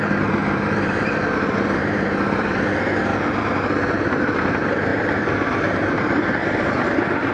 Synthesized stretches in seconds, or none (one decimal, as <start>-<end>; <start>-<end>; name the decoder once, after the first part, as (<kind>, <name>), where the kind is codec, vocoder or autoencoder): 0.0-3.1 (vocoder, BigVGAN v2); 4.1-7.3